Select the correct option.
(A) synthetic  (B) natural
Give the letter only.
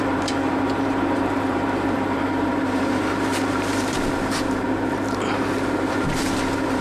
A